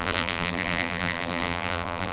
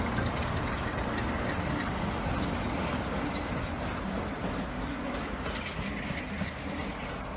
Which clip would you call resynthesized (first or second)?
first